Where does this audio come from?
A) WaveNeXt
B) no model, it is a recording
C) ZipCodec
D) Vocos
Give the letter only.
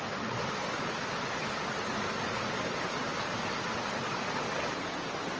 B